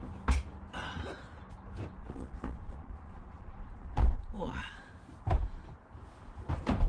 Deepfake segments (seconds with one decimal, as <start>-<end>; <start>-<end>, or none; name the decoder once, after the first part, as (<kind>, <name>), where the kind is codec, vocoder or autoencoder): 2.0-4.9 (vocoder, Vocos)